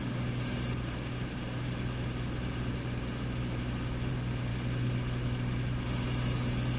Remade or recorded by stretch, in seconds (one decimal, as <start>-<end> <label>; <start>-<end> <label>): 0.0-6.8 recorded